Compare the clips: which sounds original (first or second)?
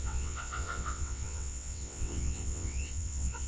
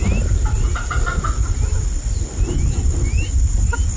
second